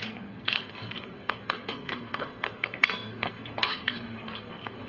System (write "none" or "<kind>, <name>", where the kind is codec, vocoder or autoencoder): codec, SNAC